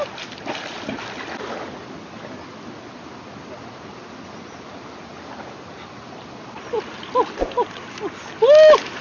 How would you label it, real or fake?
real